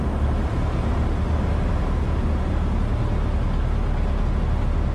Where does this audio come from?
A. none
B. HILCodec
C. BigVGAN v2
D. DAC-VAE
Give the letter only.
A